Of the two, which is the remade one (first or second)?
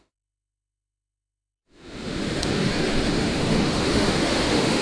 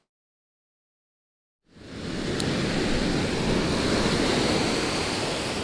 first